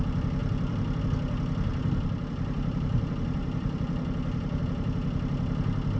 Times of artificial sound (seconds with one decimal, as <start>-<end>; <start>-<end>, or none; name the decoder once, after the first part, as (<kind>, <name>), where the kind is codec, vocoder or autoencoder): 0.4-1.0 (vocoder, BigVGAN v2); 1.7-4.6